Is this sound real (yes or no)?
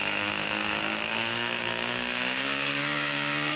no